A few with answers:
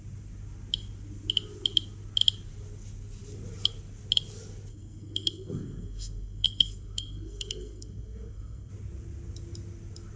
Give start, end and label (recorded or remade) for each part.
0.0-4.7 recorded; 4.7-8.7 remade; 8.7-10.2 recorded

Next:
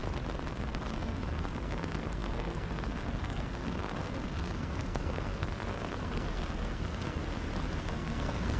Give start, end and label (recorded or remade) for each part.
0.0-0.5 recorded; 0.5-7.2 remade; 7.2-7.8 recorded; 7.8-8.6 remade